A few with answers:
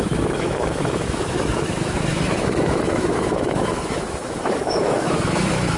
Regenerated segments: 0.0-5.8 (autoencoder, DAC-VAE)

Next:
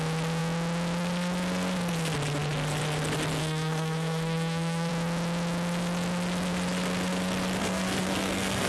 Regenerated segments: 3.4-4.9 (codec, SNAC); 7.6-8.7

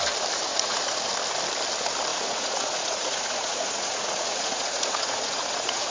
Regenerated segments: 0.5-1.0 (vocoder, Vocos); 2.1-5.9

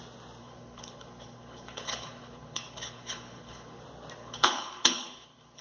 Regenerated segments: 0.4-3.8 (codec, HILCodec); 4.2-5.6

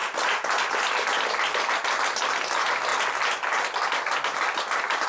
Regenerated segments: none

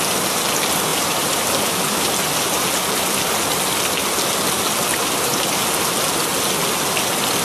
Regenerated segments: 0.9-2.1 (vocoder, BigVGAN v2); 4.9-5.5